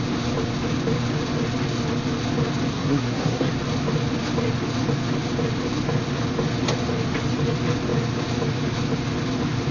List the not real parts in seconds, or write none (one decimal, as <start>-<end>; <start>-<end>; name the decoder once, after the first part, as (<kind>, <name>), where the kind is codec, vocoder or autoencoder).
2.7-3.5 (codec, SNAC)